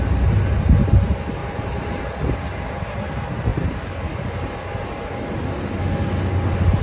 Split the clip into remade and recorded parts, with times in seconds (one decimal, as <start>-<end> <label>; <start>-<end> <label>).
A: 0.0-1.4 recorded; 1.4-2.0 remade; 2.0-6.8 recorded